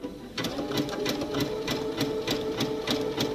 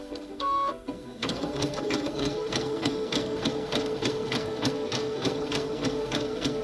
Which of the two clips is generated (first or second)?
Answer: second